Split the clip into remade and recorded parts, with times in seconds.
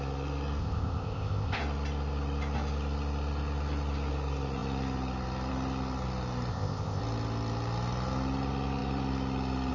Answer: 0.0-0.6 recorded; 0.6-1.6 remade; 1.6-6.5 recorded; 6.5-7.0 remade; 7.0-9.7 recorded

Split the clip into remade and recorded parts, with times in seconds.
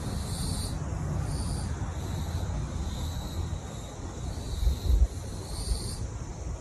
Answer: 0.0-6.6 recorded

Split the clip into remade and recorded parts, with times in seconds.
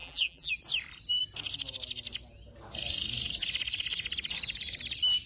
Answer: 0.0-0.5 remade; 0.5-5.3 recorded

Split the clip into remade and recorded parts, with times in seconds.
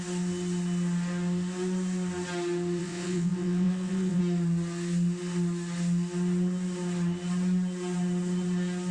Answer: 0.0-2.8 recorded; 2.8-4.2 remade; 4.2-8.9 recorded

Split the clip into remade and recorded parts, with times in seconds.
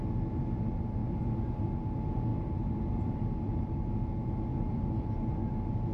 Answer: 0.0-1.0 recorded; 1.0-1.6 remade; 1.6-2.3 recorded; 2.3-3.9 remade; 3.9-4.5 recorded; 4.5-5.1 remade; 5.1-5.9 recorded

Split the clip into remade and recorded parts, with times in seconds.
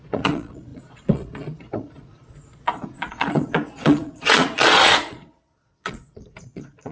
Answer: 0.0-6.9 remade